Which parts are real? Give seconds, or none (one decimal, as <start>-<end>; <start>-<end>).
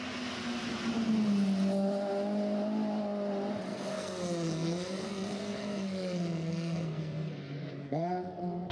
0.0-3.7